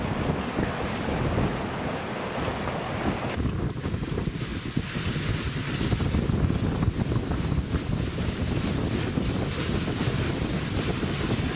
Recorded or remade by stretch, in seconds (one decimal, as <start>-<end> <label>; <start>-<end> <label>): 0.0-11.6 recorded